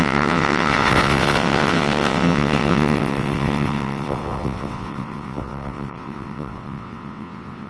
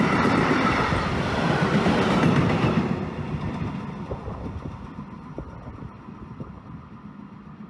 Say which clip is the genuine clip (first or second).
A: second